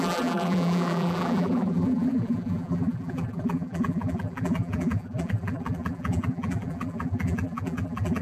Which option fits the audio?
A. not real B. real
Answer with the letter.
A